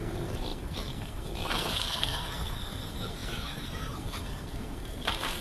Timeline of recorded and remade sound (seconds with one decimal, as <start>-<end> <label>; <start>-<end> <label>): 0.0-5.4 remade